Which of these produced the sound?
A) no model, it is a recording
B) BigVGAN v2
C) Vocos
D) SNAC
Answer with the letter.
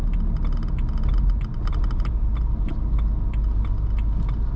A